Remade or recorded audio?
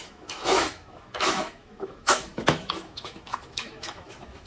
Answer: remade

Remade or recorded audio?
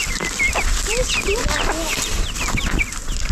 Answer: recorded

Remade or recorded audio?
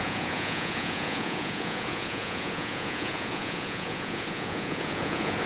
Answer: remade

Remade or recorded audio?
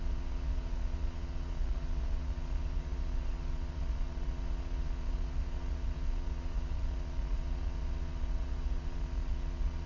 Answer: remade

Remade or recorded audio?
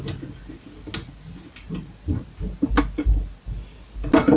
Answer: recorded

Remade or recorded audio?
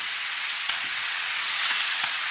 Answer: remade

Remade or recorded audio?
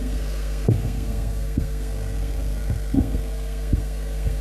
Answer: remade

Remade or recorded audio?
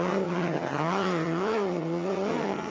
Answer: remade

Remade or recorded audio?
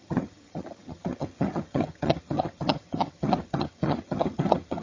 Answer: remade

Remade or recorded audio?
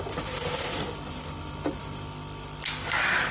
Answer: recorded